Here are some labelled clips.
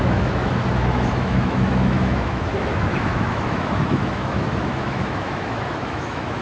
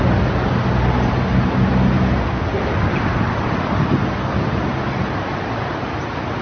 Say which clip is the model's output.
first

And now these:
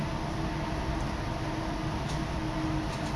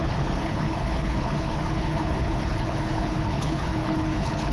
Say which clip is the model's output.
second